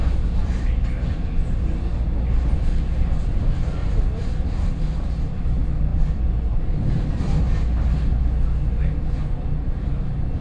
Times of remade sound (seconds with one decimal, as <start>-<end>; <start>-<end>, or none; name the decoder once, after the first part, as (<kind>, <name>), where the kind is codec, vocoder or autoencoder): 1.4-1.9 (vocoder, BigVGAN v2); 3.8-4.6; 5.9-7.0